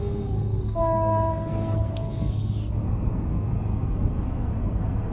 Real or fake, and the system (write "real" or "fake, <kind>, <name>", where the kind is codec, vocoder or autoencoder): fake, codec, SNAC